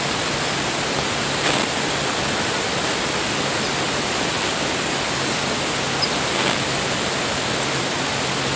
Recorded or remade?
recorded